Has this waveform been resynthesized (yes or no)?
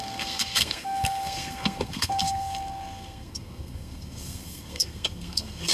yes